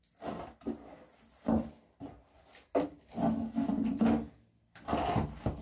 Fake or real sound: real